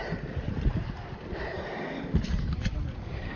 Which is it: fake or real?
fake